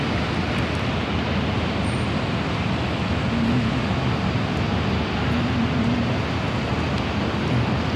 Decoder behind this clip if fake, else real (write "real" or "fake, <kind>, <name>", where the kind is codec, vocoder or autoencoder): real